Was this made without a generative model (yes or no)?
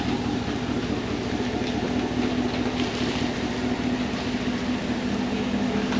yes